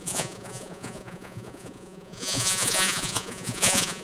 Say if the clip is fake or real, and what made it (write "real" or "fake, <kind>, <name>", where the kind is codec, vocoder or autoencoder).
fake, vocoder, Vocos